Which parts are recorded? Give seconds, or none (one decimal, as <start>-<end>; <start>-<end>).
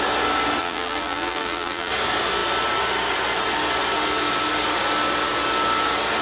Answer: 0.0-0.6; 1.9-6.2